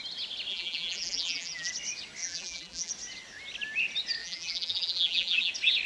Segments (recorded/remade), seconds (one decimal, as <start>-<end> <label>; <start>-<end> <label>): 0.0-0.5 recorded; 0.5-1.7 remade; 1.7-2.2 recorded; 2.2-2.9 remade; 2.9-4.2 recorded; 4.2-5.5 remade; 5.5-5.9 recorded